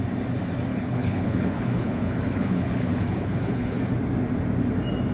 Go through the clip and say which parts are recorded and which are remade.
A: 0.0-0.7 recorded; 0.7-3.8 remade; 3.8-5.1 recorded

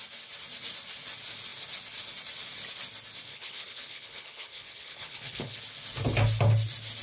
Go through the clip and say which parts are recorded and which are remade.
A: 0.0-3.3 recorded; 3.3-5.6 remade; 5.6-7.0 recorded

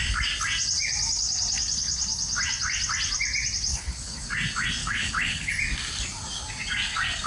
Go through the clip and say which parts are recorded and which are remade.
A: 0.0-3.7 recorded; 3.7-4.2 remade; 4.2-4.8 recorded; 4.8-5.5 remade; 5.5-7.3 recorded

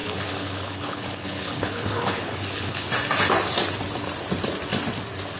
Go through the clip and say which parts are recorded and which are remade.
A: 0.0-2.9 remade; 2.9-5.4 recorded

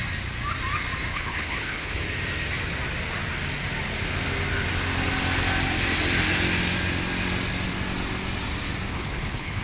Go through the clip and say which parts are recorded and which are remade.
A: 0.0-1.1 recorded; 1.1-2.0 remade; 2.0-8.9 recorded; 8.9-9.6 remade

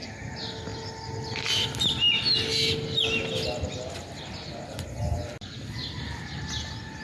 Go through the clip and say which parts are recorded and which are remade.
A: 0.0-7.0 recorded